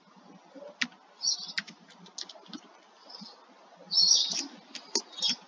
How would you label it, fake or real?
real